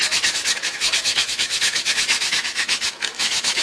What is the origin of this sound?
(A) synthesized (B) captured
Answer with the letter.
A